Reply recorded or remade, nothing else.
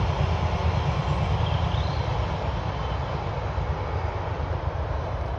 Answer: recorded